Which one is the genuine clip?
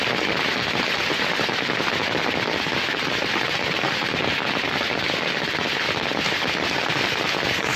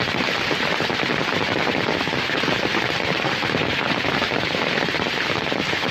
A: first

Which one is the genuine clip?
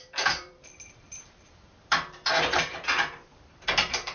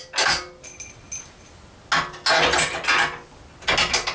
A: second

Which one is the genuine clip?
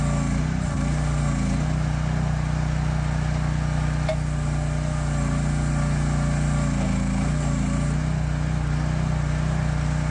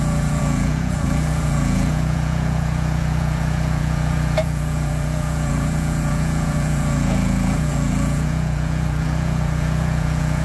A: first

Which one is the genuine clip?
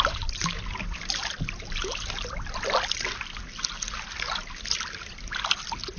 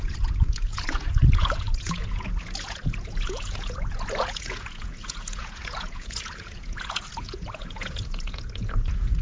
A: first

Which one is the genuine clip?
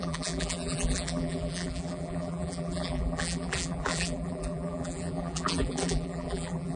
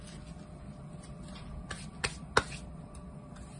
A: second